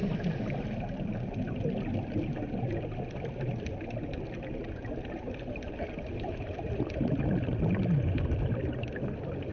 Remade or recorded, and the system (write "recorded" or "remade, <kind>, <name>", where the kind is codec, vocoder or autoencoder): recorded